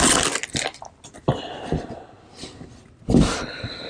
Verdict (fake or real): real